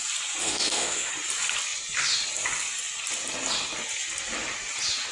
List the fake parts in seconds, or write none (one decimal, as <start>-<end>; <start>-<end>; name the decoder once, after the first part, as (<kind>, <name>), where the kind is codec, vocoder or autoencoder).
0.4-1.1 (autoencoder, DAC-VAE)